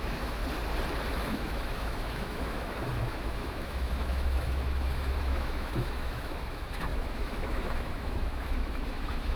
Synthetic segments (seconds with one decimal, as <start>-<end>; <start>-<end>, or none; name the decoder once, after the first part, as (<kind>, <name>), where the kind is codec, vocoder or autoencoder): 0.0-0.4 (autoencoder, DAC-VAE); 1.1-9.4